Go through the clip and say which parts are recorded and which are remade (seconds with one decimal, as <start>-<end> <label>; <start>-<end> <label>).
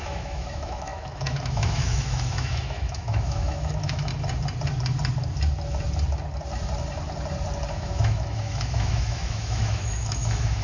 0.0-4.1 remade; 4.1-7.7 recorded; 7.7-10.6 remade